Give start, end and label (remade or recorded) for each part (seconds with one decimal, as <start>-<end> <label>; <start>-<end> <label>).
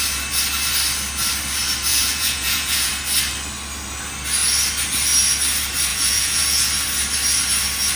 0.0-1.9 recorded; 1.9-2.9 remade; 2.9-5.9 recorded; 5.9-6.7 remade; 6.7-8.0 recorded